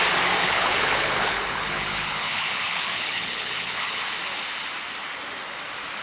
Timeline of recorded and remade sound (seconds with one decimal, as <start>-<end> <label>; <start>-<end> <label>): 0.0-0.4 recorded; 0.4-4.0 remade; 4.0-6.0 recorded